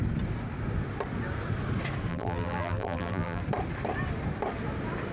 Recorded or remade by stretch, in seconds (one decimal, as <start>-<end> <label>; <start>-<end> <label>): 0.0-2.1 recorded; 2.1-3.4 remade; 3.4-5.1 recorded